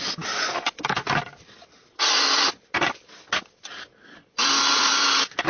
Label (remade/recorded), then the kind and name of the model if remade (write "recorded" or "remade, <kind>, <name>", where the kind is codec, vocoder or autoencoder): recorded